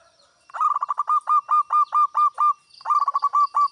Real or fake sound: real